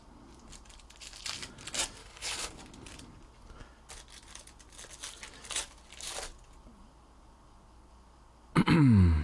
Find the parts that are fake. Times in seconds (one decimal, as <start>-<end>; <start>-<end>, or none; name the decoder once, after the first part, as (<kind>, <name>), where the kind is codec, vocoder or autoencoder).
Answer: 2.0-2.5 (codec, HILCodec)